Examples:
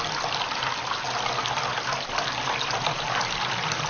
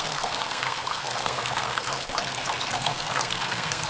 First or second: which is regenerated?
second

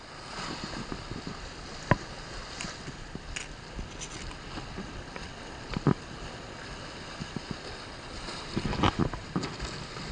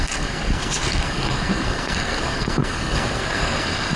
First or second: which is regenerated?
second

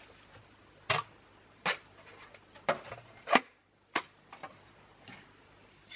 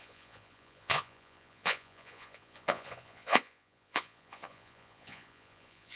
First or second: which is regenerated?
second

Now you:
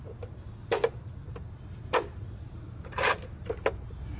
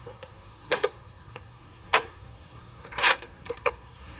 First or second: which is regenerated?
second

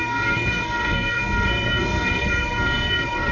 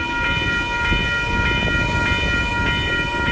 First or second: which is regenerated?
first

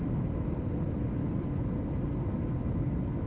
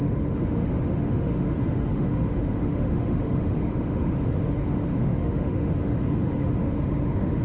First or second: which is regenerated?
second